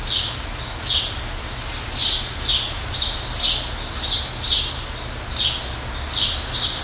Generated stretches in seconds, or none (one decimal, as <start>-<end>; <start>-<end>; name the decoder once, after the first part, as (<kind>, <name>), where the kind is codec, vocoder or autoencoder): none